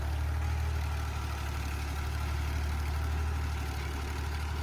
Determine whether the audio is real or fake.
real